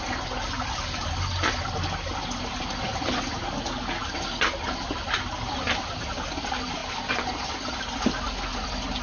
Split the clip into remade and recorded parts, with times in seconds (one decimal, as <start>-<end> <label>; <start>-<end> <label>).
0.0-9.0 recorded